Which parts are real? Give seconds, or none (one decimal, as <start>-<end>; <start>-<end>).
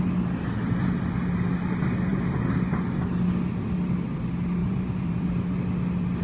0.0-2.1; 2.8-4.6; 5.4-6.2